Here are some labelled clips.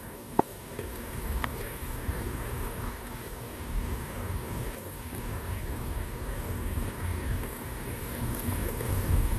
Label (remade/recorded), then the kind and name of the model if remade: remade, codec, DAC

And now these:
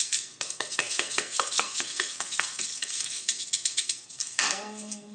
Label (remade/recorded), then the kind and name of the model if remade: remade, codec, SNAC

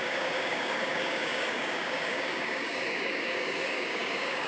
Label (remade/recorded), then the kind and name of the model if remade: remade, codec, DAC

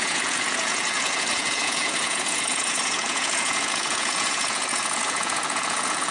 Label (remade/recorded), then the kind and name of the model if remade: remade, vocoder, Vocos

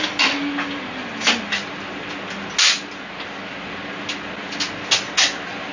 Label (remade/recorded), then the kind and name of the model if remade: recorded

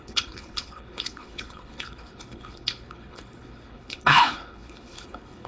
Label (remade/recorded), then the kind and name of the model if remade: remade, codec, HILCodec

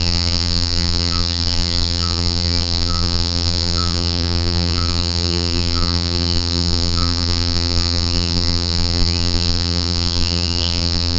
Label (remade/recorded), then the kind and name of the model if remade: remade, vocoder, BigVGAN v2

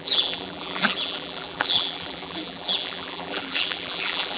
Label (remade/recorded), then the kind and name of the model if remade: remade, vocoder, BigVGAN v2